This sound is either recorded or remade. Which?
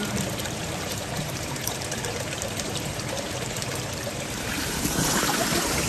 remade